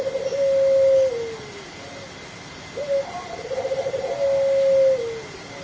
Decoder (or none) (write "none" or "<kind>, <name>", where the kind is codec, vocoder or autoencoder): none